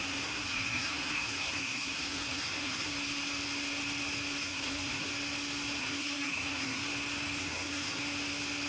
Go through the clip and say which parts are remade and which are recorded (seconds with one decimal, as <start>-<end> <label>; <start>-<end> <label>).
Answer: 0.0-2.9 remade; 2.9-4.4 recorded; 4.4-5.1 remade; 5.1-5.8 recorded; 5.8-6.8 remade; 6.8-7.4 recorded; 7.4-8.0 remade; 8.0-8.7 recorded